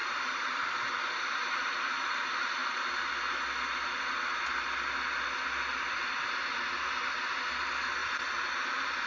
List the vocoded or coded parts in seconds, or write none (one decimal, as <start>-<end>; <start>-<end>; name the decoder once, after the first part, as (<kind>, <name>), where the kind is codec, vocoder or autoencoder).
0.0-0.7 (vocoder, BigVGAN v2); 2.6-3.1; 8.0-9.1